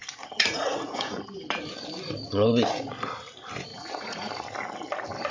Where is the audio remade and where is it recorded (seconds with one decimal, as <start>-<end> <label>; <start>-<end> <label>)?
0.0-1.2 remade; 1.2-3.7 recorded; 3.7-4.3 remade; 4.3-5.3 recorded

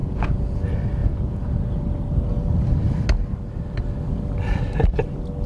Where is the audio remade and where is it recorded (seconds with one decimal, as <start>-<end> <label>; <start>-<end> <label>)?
0.0-0.6 remade; 0.6-1.0 recorded; 1.0-1.8 remade; 1.8-5.5 recorded

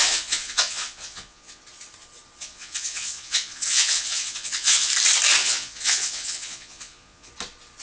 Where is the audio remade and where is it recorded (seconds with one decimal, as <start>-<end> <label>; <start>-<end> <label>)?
0.0-1.6 remade; 1.6-2.4 recorded; 2.4-4.9 remade; 4.9-5.4 recorded; 5.4-7.3 remade; 7.3-7.8 recorded

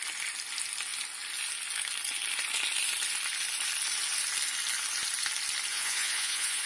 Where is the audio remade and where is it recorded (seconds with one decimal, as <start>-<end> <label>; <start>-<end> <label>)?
0.0-5.7 recorded; 5.7-6.7 remade